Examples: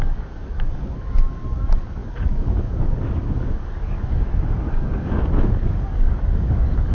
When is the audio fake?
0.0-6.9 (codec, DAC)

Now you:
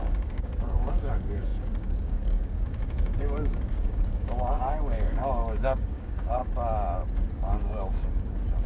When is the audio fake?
0.0-6.4 (codec, DAC); 7.3-8.7

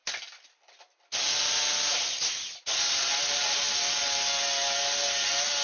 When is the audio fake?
none